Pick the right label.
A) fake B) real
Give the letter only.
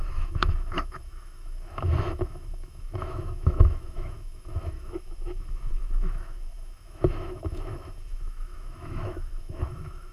A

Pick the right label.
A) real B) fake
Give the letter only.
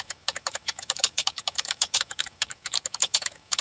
B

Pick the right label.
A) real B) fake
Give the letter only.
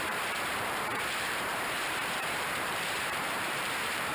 B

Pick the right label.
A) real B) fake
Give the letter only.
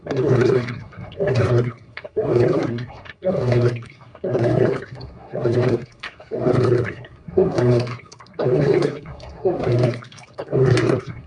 B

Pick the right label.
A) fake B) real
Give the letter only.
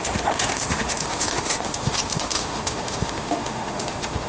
A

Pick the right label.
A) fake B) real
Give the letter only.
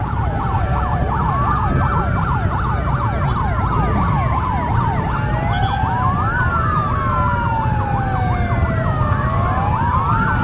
B